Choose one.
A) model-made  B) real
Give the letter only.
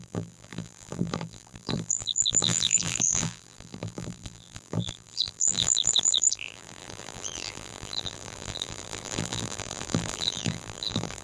A